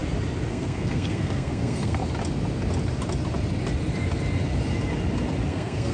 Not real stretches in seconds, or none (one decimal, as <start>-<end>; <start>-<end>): 0.5-2.0; 5.5-5.9